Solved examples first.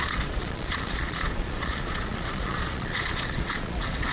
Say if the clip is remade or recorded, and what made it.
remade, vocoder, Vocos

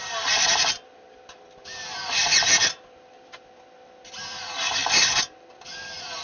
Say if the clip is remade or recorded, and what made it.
recorded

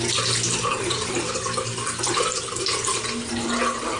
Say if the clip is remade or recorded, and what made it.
recorded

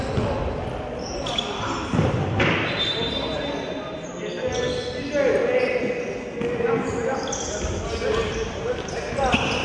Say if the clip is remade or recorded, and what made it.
recorded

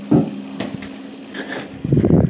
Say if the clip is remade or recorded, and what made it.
recorded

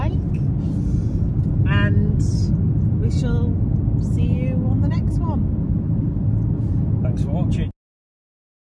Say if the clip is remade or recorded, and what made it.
recorded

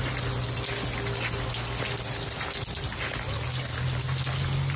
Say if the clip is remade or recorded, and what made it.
recorded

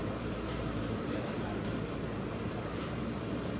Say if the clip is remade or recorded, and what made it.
remade, vocoder, BigVGAN v2